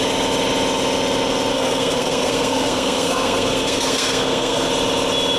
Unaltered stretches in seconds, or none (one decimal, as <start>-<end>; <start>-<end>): 0.0-1.5; 4.7-5.4